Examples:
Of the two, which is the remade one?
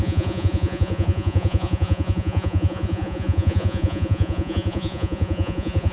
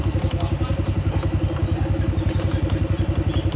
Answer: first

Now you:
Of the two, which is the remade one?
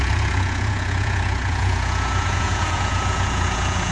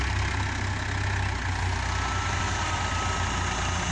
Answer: first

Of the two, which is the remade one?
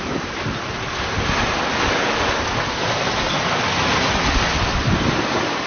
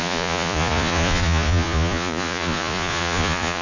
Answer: second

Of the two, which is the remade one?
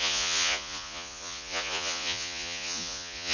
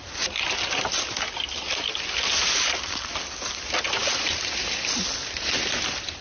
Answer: first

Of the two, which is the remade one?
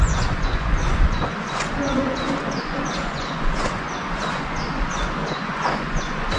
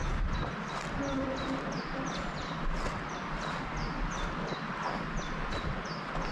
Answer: first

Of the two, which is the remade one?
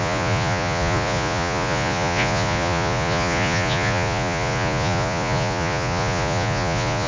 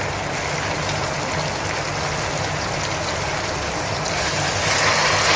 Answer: first